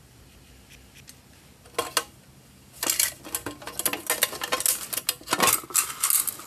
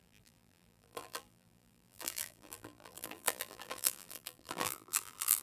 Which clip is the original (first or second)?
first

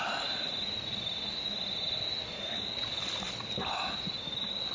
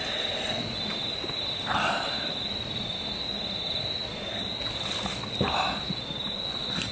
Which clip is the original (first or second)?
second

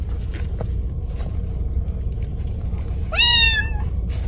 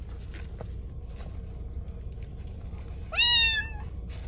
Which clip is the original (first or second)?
second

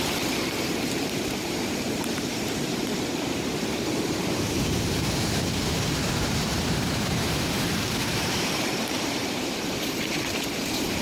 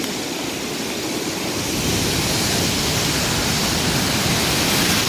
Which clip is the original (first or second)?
second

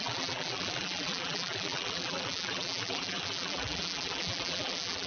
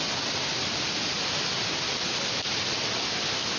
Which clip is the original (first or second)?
second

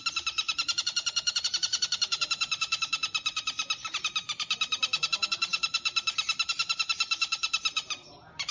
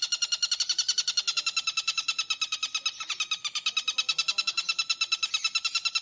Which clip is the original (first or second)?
second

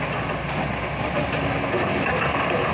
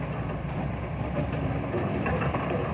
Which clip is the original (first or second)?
first